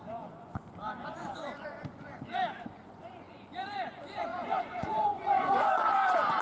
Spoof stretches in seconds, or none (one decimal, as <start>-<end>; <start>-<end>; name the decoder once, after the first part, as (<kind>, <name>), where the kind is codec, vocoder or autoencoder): 0.0-6.4 (vocoder, Vocos)